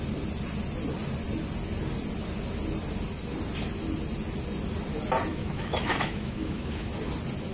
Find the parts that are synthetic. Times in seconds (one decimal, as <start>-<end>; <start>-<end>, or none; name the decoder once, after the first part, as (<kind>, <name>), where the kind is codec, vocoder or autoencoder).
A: 5.3-6.9 (autoencoder, DAC-VAE)